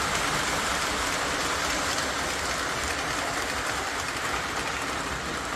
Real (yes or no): yes